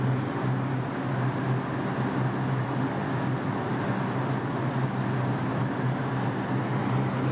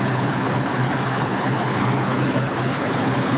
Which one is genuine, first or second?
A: first